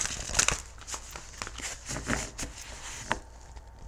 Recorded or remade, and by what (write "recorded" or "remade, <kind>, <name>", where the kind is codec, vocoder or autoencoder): recorded